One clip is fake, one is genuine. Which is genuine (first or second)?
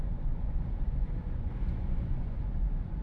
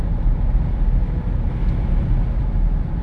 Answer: second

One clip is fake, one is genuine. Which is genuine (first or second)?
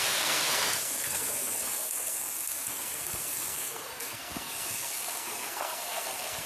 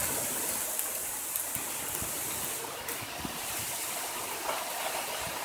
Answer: second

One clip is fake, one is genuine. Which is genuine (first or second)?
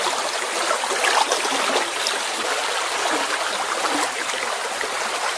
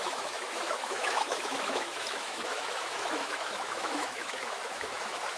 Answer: first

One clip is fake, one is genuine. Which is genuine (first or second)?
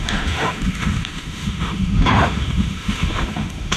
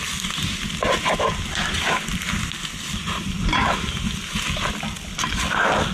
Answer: second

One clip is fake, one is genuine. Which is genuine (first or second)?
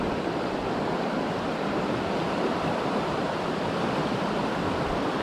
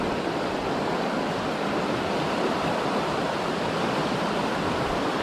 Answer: second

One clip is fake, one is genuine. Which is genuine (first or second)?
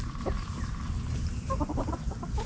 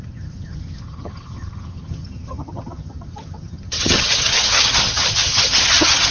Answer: first